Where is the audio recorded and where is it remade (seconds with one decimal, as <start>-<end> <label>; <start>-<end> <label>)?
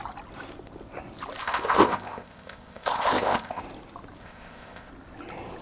0.0-1.4 recorded; 1.4-3.6 remade; 3.6-4.2 recorded; 4.2-4.9 remade; 4.9-5.6 recorded